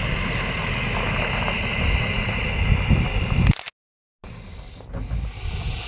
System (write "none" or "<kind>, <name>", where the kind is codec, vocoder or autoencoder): none